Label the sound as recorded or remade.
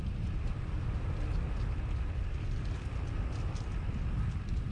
recorded